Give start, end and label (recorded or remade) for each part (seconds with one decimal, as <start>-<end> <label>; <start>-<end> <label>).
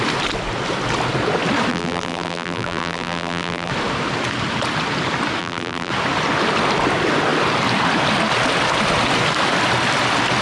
0.0-1.7 recorded; 1.7-3.7 remade; 3.7-5.4 recorded; 5.4-5.9 remade; 5.9-10.4 recorded